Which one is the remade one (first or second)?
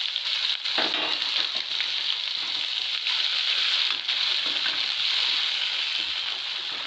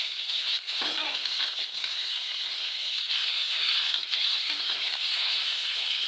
second